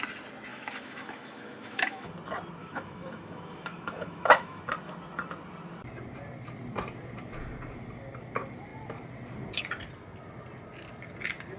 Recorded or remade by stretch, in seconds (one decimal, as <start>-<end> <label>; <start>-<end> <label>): 0.0-0.5 recorded; 0.5-2.1 remade; 2.1-2.6 recorded; 2.6-4.6 remade; 4.6-11.6 recorded